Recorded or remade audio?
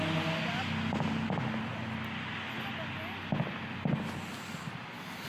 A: recorded